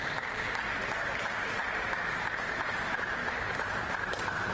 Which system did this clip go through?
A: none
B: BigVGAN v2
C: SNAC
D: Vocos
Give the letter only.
B